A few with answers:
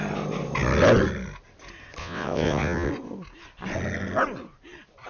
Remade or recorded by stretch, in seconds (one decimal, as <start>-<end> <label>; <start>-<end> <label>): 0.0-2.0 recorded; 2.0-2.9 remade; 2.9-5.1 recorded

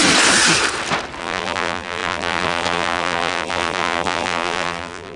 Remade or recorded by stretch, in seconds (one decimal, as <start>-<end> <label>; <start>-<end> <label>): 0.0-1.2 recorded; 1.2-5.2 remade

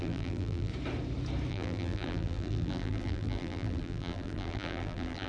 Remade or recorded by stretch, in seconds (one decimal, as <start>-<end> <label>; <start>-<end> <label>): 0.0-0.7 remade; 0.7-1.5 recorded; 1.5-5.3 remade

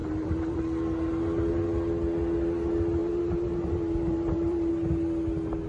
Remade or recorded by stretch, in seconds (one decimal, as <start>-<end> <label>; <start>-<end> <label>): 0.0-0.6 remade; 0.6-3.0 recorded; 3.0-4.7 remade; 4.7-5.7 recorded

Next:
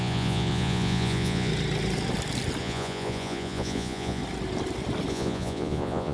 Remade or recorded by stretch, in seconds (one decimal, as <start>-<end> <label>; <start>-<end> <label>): 0.0-1.5 remade; 1.5-2.6 recorded; 2.6-4.2 remade; 4.2-5.1 recorded; 5.1-6.1 remade

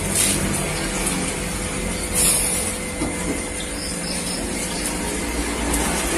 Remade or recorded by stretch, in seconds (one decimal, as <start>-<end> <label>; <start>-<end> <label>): 0.0-3.9 recorded; 3.9-5.2 remade; 5.2-6.2 recorded